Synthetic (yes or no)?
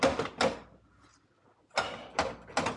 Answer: no